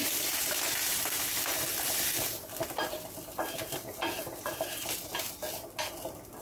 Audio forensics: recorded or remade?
recorded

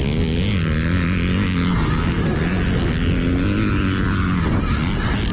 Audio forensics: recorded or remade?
recorded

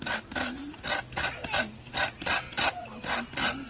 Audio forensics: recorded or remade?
recorded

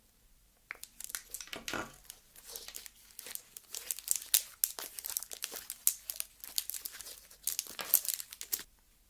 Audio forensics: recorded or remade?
recorded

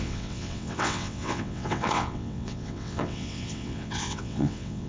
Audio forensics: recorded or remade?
remade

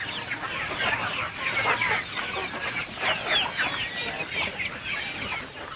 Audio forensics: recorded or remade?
recorded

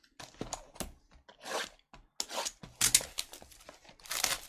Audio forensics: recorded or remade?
recorded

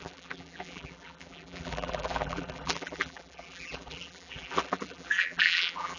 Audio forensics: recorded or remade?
remade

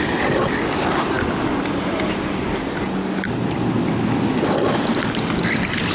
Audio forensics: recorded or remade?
recorded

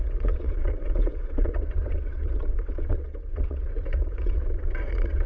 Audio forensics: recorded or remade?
remade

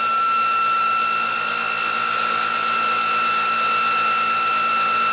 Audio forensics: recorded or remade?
recorded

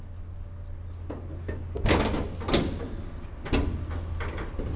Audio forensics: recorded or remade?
recorded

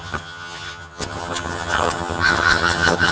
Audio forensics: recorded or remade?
remade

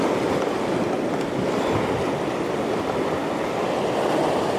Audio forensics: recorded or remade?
recorded